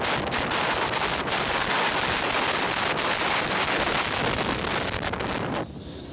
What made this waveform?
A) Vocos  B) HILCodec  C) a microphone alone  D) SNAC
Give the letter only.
C